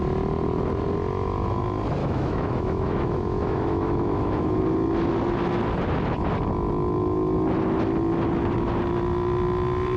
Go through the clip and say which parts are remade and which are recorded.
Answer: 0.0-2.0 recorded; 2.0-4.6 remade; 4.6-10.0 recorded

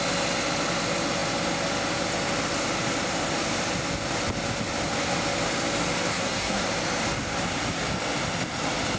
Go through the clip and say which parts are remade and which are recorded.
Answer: 0.0-6.1 recorded; 6.1-6.6 remade; 6.6-9.0 recorded